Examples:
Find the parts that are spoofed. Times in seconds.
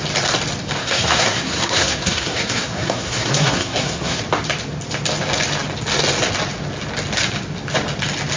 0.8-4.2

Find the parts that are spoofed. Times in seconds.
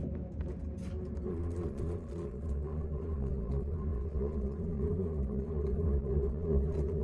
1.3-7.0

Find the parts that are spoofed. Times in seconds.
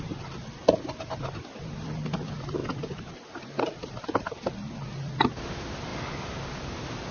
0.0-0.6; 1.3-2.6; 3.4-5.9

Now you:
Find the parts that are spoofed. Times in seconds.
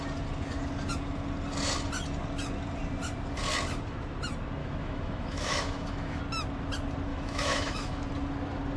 4.6-6.2; 7.1-8.0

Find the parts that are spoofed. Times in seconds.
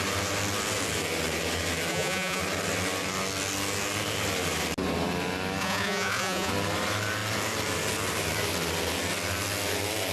1.9-2.4; 5.6-6.5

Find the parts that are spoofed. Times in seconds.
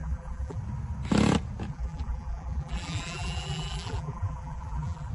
0.0-0.6; 1.7-5.1